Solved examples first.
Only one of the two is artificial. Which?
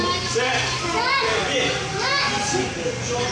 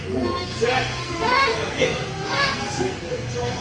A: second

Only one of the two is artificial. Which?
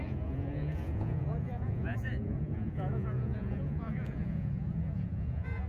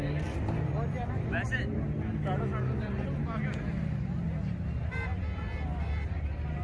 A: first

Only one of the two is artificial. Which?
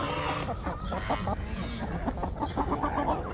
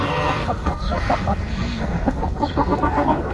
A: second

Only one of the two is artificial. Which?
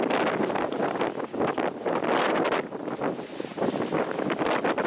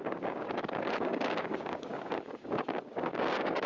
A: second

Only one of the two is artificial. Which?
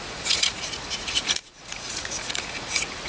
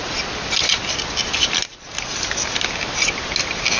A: first